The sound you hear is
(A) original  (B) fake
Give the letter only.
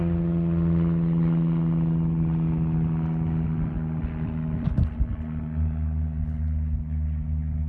A